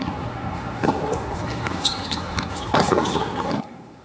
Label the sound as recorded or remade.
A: remade